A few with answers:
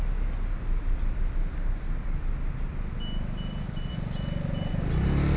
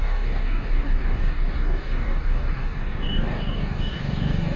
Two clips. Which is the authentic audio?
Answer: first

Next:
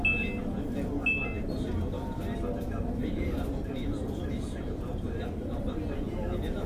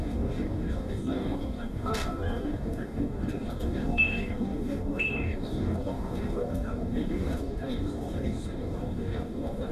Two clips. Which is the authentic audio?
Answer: first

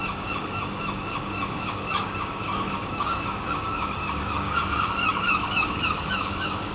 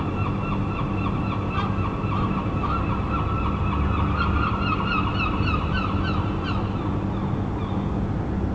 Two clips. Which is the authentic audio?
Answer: second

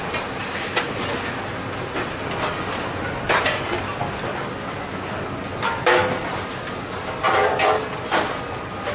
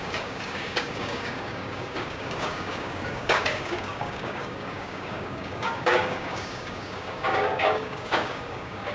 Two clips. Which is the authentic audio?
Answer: first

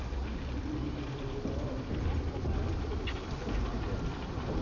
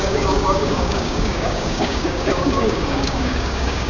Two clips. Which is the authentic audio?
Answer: first